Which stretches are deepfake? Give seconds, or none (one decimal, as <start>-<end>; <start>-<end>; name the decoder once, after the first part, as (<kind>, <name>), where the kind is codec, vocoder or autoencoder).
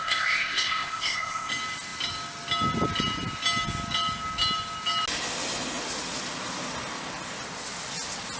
0.0-1.5 (codec, ZipCodec)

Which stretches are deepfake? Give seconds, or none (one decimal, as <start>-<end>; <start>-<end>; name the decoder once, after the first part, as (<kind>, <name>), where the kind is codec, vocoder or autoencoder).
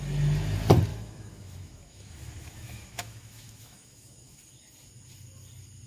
0.9-4.4 (autoencoder, DAC-VAE)